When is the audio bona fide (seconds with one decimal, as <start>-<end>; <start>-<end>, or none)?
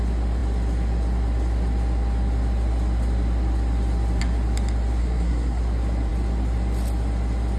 0.0-5.0; 5.6-7.6